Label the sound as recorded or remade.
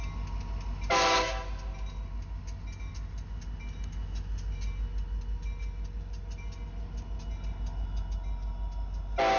recorded